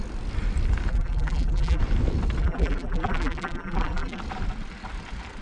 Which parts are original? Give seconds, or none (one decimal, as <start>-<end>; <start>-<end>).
0.0-0.9; 1.8-2.4; 4.2-5.4